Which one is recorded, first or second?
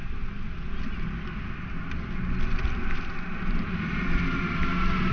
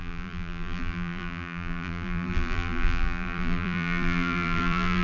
first